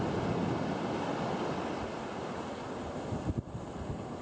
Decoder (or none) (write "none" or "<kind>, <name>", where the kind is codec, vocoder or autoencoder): none